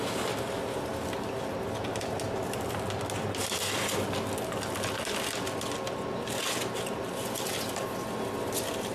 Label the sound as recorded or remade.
recorded